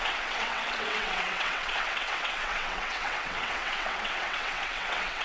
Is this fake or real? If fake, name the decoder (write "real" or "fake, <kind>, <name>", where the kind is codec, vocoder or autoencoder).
fake, vocoder, WaveNeXt